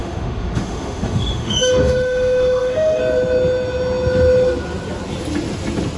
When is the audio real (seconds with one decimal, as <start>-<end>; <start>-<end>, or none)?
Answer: 3.0-6.0